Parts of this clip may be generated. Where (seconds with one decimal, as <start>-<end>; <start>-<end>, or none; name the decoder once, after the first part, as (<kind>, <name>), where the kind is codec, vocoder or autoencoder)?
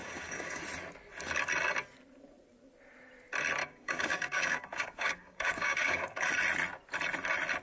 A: 0.0-0.6 (codec, DAC); 3.6-6.3